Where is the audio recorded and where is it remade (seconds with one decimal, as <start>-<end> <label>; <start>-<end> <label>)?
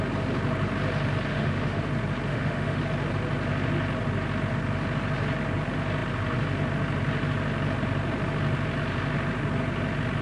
0.0-1.3 recorded; 1.3-1.8 remade; 1.8-2.3 recorded; 2.3-2.8 remade; 2.8-10.2 recorded